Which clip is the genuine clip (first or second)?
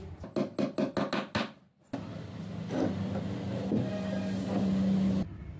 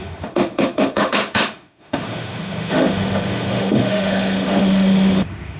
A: first